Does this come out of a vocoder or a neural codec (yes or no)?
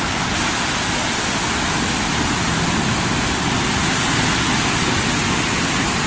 no